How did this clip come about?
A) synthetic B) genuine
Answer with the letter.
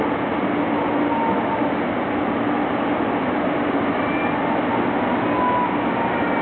B